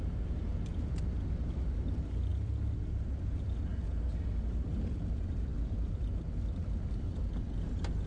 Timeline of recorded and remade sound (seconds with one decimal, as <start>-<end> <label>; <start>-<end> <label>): 0.0-3.7 remade; 3.7-4.4 recorded; 4.4-8.1 remade